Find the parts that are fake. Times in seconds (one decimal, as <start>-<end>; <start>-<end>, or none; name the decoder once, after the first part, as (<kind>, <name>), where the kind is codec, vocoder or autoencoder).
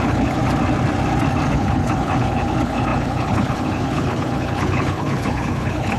0.0-0.4 (codec, HILCodec); 1.5-6.0